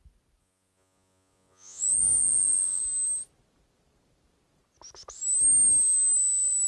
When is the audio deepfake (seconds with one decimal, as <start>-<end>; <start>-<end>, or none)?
0.4-2.8